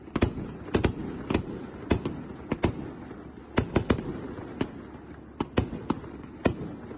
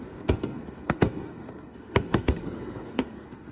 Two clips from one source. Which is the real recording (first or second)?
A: first